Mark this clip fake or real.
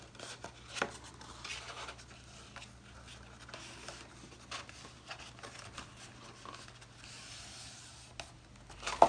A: real